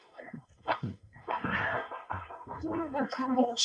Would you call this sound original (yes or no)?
no